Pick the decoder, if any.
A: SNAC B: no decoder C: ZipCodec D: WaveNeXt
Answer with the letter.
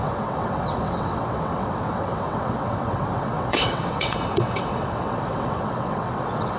D